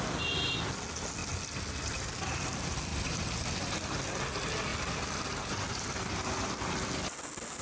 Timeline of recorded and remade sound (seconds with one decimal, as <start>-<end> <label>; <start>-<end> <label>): 0.0-1.2 recorded; 1.2-2.1 remade; 2.1-2.9 recorded; 2.9-3.7 remade; 3.7-4.7 recorded; 4.7-5.2 remade; 5.2-7.6 recorded